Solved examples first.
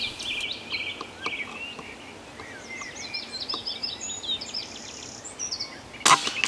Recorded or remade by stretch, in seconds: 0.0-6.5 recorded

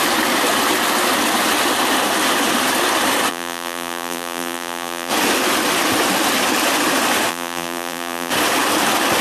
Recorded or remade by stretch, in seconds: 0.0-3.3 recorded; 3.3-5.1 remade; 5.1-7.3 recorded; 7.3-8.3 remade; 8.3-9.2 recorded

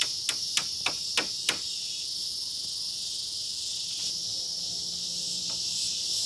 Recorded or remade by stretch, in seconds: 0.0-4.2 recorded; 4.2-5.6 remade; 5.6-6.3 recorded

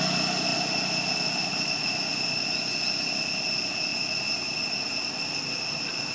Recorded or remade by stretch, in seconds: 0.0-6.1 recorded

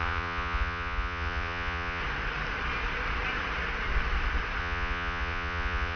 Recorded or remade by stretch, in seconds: 0.0-2.0 remade; 2.0-4.6 recorded; 4.6-6.0 remade